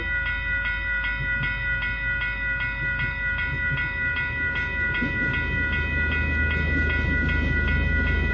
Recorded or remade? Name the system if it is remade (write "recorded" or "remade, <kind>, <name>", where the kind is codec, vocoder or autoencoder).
recorded